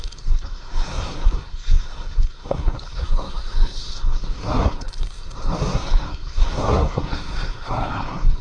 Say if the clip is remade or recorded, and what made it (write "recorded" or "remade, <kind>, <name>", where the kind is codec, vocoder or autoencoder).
remade, codec, SNAC